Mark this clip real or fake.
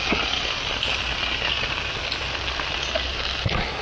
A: real